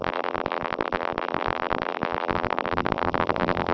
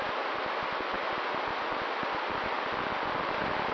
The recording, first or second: second